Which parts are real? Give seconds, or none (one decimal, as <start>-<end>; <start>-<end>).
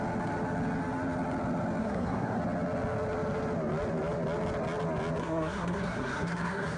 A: 0.0-1.8; 2.4-5.2